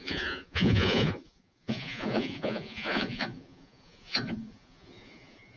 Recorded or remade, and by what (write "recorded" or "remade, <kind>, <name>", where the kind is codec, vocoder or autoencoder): remade, vocoder, Vocos